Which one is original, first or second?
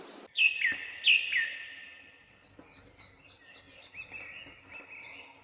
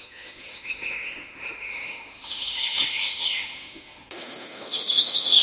first